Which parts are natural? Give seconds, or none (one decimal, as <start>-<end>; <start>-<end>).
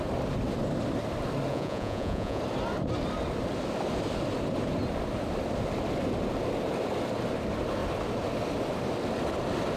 0.0-1.5; 2.4-9.8